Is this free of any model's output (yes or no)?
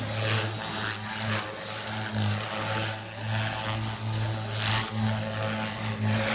yes